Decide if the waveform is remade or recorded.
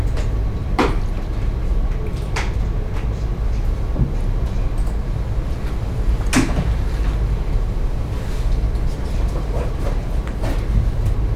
recorded